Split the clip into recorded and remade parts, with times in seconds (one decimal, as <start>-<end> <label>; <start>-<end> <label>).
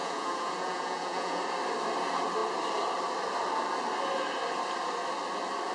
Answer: 0.0-1.4 remade; 1.4-5.7 recorded